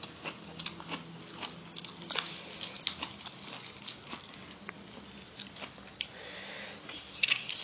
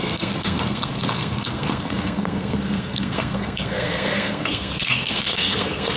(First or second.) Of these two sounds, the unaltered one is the first